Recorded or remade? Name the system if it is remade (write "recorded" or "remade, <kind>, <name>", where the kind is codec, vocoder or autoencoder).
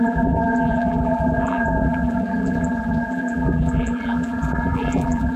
remade, vocoder, BigVGAN v2